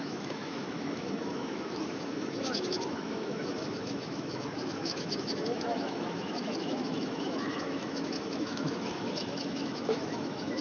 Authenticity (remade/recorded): remade